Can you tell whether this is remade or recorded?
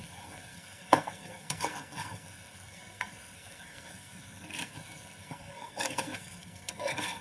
remade